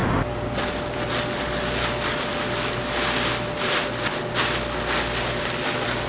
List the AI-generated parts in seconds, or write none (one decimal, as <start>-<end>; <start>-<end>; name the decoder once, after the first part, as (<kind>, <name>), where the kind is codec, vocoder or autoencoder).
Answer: none